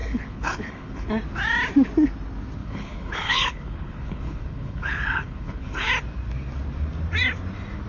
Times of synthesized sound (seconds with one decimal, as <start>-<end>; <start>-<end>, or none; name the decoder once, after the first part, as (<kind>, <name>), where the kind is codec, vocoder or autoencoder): 0.0-1.1 (codec, HILCodec); 2.6-5.9